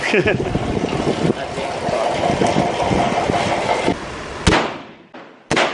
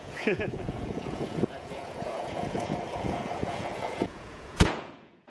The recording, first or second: first